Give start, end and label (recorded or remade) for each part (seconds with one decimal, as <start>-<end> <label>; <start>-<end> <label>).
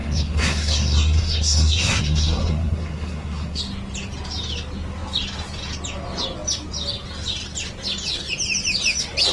0.0-3.6 remade; 3.6-9.3 recorded